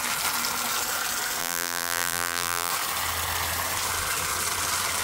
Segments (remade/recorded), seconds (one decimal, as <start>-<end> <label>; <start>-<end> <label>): 0.0-1.4 recorded; 1.4-2.7 remade; 2.7-5.0 recorded